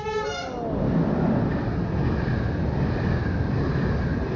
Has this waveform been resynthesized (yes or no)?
no